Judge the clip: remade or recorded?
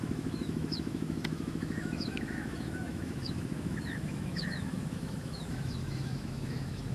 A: remade